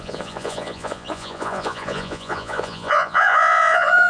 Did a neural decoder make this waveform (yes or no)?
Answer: yes